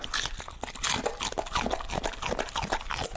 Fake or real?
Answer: real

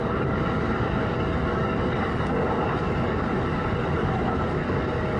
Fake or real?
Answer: fake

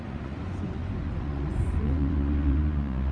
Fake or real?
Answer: fake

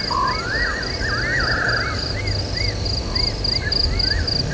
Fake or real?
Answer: real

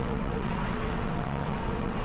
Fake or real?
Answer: fake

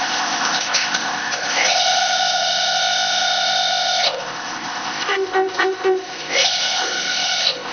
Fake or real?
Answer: fake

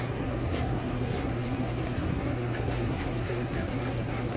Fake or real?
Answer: fake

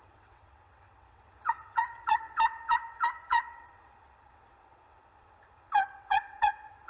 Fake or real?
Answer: fake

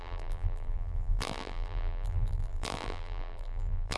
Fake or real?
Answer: fake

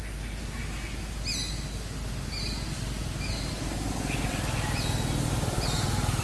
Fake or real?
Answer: real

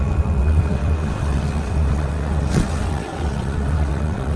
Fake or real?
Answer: fake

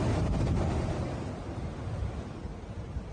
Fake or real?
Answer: real